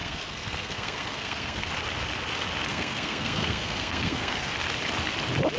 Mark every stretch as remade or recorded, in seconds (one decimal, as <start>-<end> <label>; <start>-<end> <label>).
0.0-1.7 remade; 1.7-2.7 recorded; 2.7-4.5 remade; 4.5-5.6 recorded